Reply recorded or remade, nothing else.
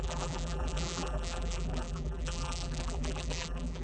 remade